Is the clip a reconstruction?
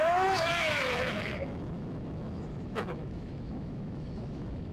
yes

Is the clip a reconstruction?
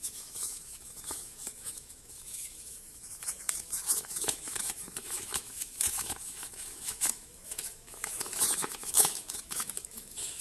yes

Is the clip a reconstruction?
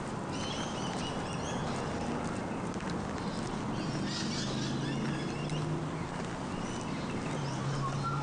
no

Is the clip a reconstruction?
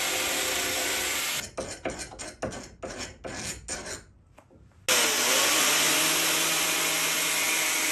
no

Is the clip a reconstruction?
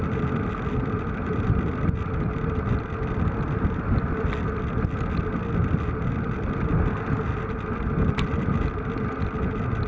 no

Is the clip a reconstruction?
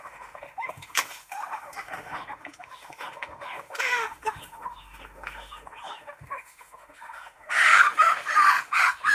yes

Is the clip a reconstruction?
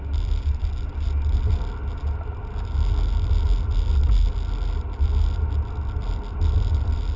no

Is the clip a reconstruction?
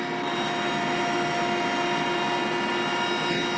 no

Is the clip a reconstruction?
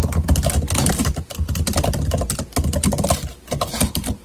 no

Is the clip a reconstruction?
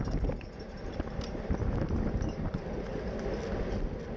no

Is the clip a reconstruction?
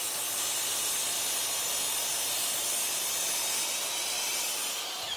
no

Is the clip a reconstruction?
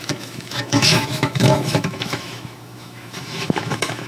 yes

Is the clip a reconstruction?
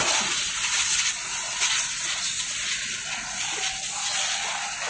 no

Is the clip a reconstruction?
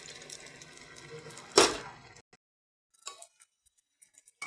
no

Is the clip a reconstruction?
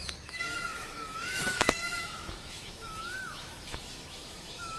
yes